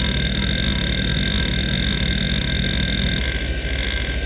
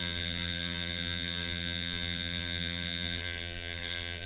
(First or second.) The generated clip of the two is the second